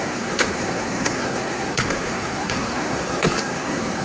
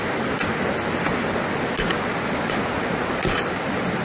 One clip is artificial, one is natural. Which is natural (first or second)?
second